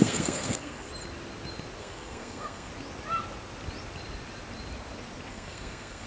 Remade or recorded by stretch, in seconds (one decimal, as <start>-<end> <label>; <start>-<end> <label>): 0.0-0.9 remade; 0.9-1.8 recorded; 1.8-2.7 remade; 2.7-5.3 recorded; 5.3-6.1 remade